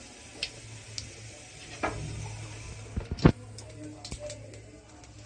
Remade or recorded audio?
recorded